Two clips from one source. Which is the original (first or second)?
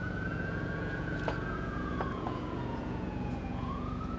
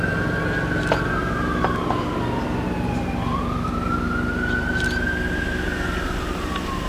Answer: second